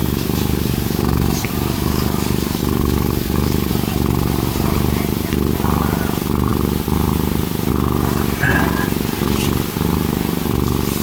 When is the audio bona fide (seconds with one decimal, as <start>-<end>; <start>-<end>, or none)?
3.7-11.0